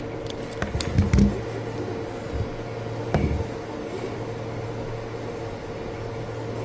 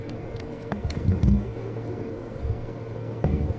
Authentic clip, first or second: first